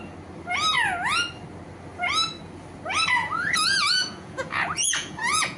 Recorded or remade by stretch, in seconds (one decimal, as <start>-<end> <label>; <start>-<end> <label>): 0.0-3.2 recorded; 3.2-5.6 remade